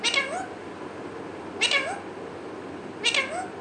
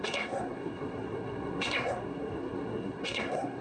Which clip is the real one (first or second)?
first